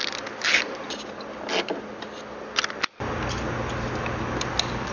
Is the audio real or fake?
real